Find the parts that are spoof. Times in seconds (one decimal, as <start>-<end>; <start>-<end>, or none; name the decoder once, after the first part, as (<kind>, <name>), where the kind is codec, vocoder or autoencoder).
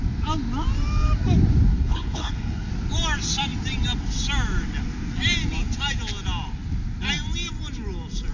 1.7-2.7 (codec, HILCodec)